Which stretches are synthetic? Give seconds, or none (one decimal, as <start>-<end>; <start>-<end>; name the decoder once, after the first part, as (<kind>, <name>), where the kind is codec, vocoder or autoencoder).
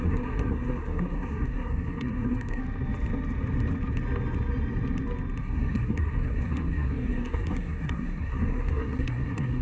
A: 0.0-2.6 (codec, SNAC); 5.4-9.6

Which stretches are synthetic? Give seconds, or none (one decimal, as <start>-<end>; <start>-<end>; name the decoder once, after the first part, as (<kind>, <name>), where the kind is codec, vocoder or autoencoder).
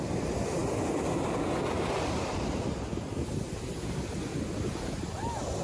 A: none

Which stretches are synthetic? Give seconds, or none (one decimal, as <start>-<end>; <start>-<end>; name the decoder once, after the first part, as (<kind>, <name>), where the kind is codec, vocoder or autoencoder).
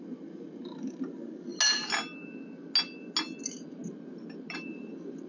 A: 0.0-1.5 (vocoder, BigVGAN v2); 4.7-5.3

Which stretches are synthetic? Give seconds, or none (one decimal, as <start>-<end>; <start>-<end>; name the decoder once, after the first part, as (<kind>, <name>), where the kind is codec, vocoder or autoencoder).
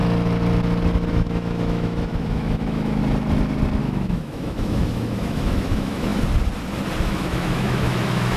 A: 1.1-3.0 (autoencoder, DAC-VAE); 3.8-6.1; 7.0-8.4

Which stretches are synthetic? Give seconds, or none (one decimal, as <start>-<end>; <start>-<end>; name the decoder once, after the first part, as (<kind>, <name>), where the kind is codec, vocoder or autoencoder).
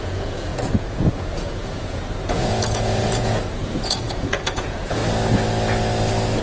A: 0.0-5.0 (vocoder, Vocos)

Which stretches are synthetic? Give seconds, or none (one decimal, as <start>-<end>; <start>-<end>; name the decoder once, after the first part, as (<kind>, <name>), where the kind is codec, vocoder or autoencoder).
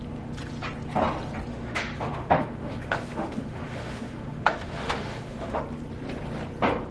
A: 1.5-5.6 (autoencoder, DAC-VAE)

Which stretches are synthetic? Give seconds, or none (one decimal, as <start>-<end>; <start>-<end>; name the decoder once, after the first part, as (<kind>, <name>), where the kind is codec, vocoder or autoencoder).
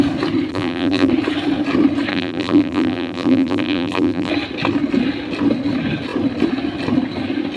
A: 0.5-1.1 (vocoder, BigVGAN v2); 2.1-4.3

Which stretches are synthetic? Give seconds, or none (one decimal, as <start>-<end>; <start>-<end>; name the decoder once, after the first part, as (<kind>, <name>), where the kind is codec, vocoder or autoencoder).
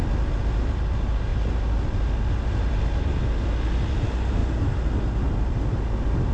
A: none